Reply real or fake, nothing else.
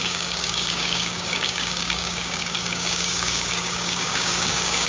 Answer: fake